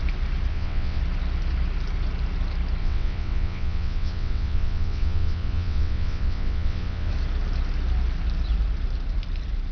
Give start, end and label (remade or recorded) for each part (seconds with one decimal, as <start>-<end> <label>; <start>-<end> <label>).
0.0-0.5 recorded; 0.5-1.0 remade; 1.0-2.8 recorded; 2.8-7.1 remade; 7.1-9.7 recorded